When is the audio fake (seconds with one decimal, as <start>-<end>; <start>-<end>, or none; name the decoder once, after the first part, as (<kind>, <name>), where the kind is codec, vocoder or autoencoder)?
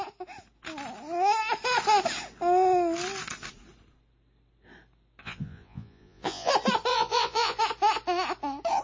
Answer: 5.2-6.5 (vocoder, Vocos); 6.9-7.6